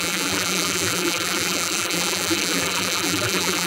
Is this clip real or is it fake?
fake